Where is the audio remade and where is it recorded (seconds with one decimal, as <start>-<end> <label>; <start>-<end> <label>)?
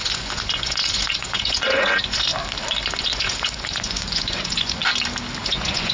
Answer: 0.0-2.3 remade; 2.3-3.0 recorded; 3.0-4.8 remade; 4.8-5.4 recorded; 5.4-5.9 remade